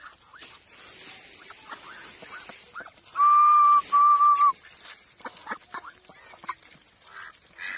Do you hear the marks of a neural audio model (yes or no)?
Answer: no